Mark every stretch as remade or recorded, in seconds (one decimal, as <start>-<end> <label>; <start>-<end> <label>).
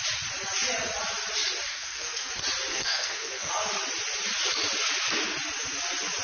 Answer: 0.0-1.7 recorded; 1.7-2.3 remade; 2.3-2.7 recorded; 2.7-3.5 remade; 3.5-6.2 recorded